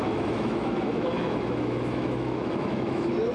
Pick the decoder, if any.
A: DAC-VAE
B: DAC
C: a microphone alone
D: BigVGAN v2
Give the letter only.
A